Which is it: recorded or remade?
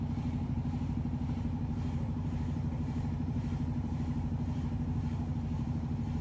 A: remade